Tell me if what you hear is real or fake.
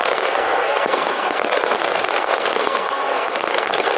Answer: fake